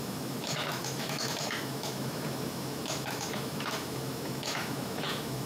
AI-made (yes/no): yes